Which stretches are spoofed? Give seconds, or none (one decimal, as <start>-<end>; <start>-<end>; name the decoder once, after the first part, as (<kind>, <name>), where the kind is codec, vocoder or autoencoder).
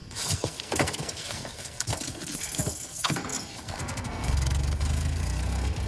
0.0-5.9 (codec, SNAC)